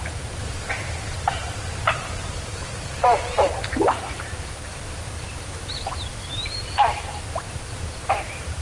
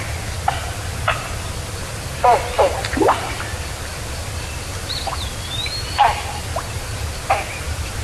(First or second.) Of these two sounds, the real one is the second